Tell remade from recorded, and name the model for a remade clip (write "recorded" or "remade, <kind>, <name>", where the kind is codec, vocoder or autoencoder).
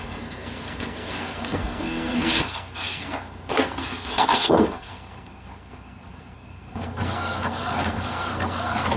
remade, codec, SNAC